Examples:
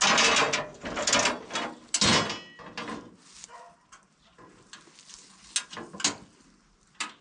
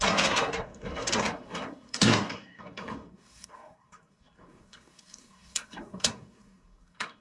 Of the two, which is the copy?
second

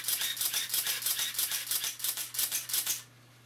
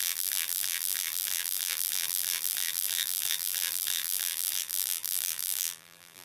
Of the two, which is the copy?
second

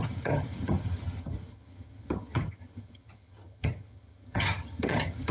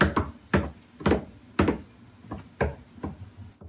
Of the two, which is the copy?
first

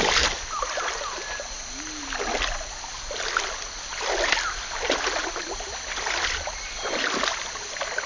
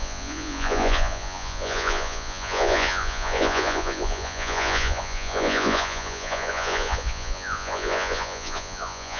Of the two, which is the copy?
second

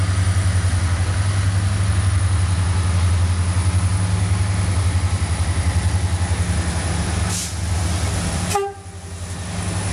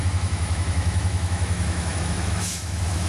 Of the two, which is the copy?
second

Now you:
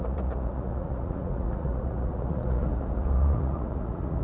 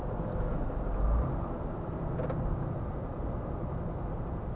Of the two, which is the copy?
first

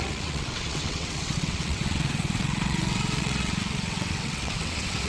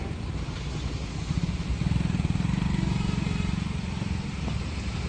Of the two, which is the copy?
first